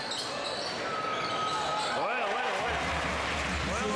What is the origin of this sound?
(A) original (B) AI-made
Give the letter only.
A